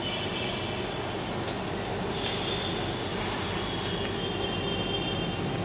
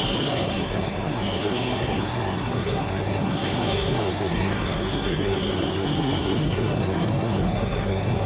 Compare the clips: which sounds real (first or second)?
first